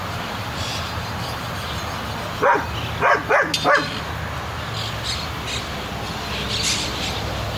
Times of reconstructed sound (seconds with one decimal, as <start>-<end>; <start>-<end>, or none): 0.0-2.1